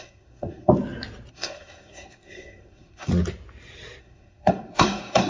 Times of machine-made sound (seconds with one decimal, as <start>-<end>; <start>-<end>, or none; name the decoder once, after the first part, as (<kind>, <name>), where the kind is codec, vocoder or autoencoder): 0.0-0.7 (codec, SNAC); 1.3-3.1; 4.0-5.3